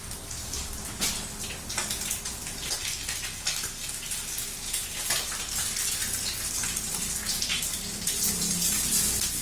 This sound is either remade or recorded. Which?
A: recorded